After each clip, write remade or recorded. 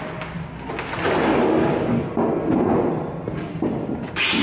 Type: recorded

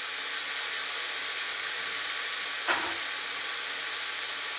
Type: recorded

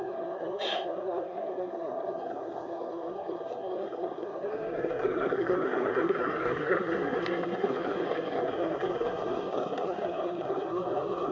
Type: remade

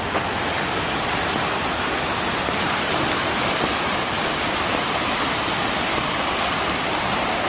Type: recorded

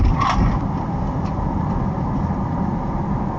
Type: recorded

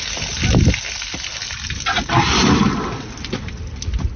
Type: recorded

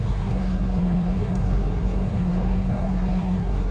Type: remade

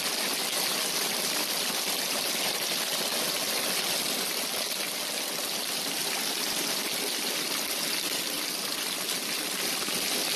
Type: recorded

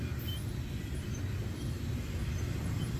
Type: recorded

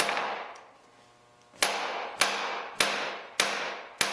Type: recorded